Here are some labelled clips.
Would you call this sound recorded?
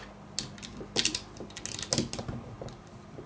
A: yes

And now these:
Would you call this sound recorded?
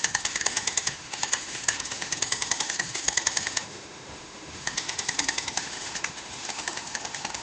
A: no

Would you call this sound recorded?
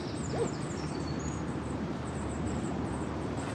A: no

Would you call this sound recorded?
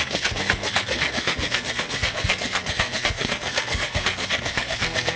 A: no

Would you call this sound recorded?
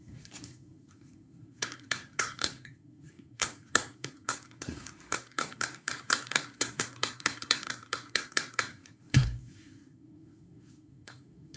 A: no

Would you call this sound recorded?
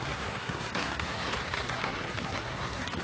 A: no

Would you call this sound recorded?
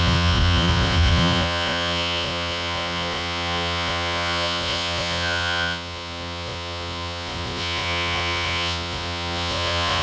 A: no